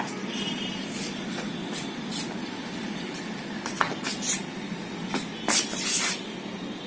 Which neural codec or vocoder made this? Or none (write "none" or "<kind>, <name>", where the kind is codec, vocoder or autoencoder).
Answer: vocoder, BigVGAN v2